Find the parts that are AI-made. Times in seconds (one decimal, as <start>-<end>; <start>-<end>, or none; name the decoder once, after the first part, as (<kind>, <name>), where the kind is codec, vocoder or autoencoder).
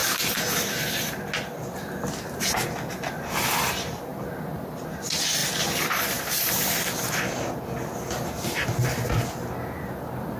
none